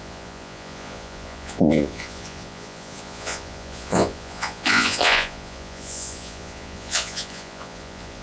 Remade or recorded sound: remade